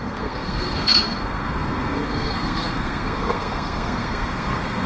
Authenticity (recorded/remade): remade